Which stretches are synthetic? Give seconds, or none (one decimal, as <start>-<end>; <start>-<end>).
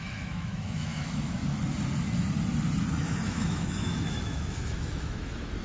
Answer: 0.0-1.4; 2.9-5.6